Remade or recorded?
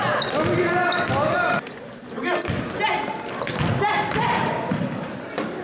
recorded